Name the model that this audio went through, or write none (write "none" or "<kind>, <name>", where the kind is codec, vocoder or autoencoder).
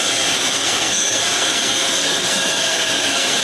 codec, SNAC